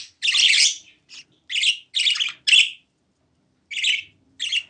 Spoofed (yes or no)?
no